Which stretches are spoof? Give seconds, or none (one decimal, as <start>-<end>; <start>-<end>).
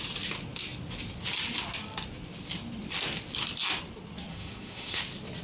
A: 4.3-5.0